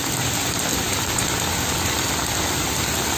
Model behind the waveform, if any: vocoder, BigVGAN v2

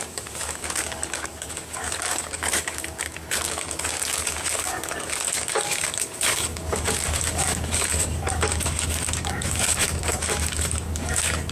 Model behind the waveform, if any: codec, DAC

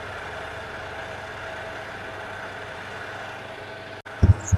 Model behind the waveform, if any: none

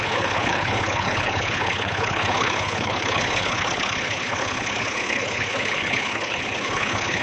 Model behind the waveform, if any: codec, HILCodec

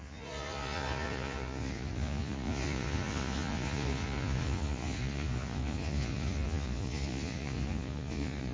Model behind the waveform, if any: vocoder, Vocos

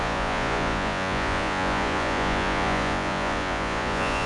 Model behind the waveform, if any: vocoder, Vocos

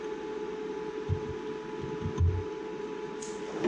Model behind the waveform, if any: none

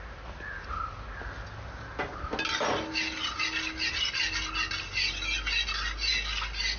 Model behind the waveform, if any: none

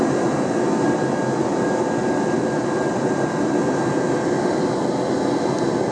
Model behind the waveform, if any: none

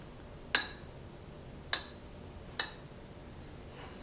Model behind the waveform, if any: none